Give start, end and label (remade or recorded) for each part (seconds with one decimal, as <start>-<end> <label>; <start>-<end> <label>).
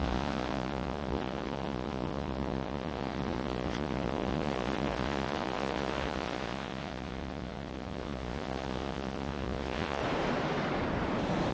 0.0-10.0 remade; 10.0-11.5 recorded